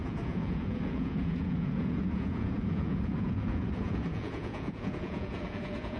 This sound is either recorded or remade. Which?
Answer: remade